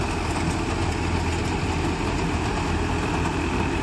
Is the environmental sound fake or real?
real